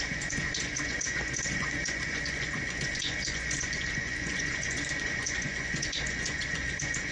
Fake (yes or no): yes